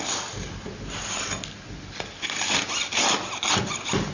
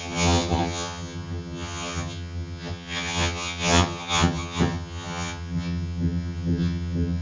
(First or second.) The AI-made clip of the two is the second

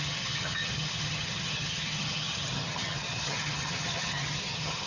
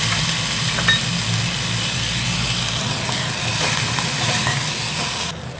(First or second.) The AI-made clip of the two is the first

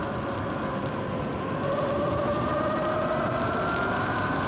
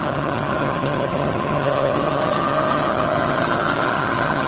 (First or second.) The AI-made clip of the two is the second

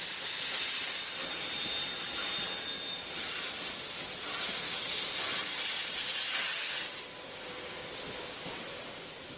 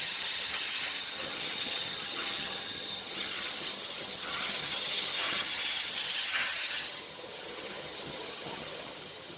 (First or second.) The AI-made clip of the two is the second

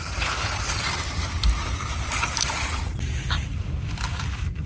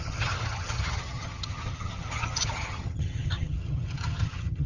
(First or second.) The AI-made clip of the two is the second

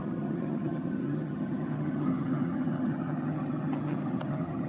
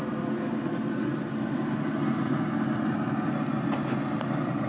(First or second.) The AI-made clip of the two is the first